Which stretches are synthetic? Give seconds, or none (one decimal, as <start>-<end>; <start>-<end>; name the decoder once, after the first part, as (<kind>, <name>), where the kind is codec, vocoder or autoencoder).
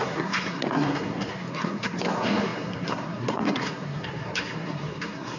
0.0-5.4 (codec, SNAC)